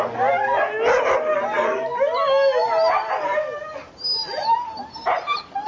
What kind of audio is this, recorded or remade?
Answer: recorded